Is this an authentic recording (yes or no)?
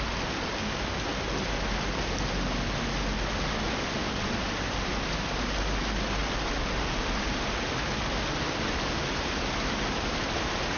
yes